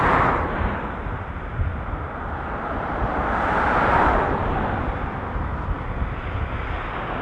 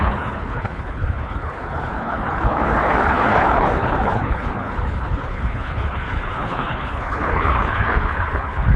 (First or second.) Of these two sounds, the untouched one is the first